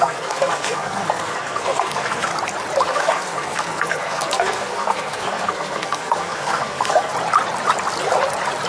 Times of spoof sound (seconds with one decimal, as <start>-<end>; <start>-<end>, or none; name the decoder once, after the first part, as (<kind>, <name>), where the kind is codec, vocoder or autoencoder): 0.0-2.3 (codec, SNAC); 2.9-7.1